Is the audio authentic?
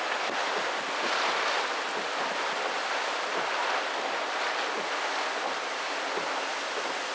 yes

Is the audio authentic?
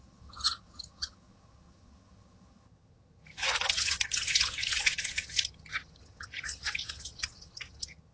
no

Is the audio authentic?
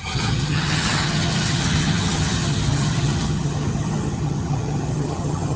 no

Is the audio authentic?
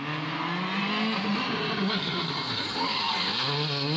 yes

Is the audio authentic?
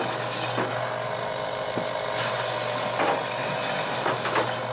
yes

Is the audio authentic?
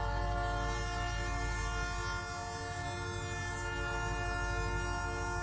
yes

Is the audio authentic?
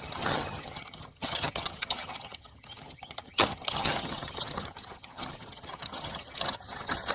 no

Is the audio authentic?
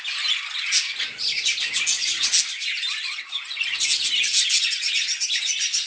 yes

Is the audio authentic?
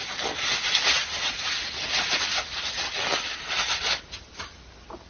yes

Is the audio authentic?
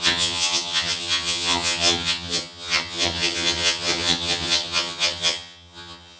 no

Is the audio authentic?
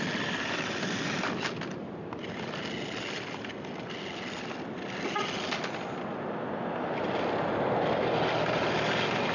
yes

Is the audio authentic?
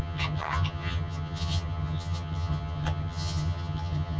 no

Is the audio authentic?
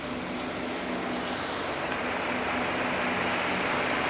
yes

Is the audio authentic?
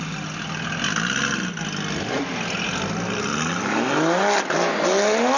yes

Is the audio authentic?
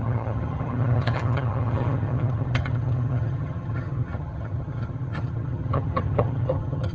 no